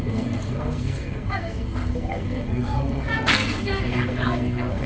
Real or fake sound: fake